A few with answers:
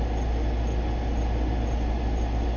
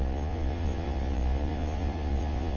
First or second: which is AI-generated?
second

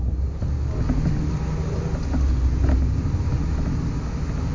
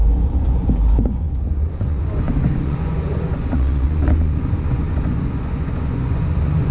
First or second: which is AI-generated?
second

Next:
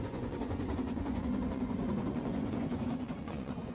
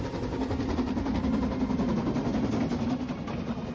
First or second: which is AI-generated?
first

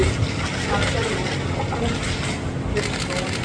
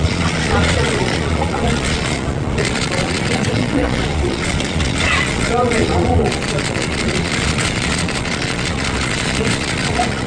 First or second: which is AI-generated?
second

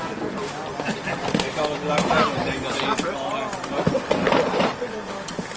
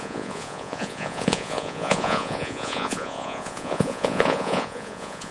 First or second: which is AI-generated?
second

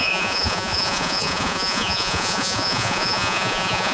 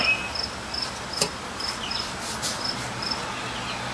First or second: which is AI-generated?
first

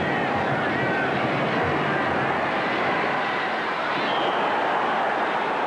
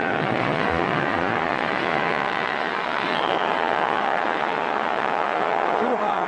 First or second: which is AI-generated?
second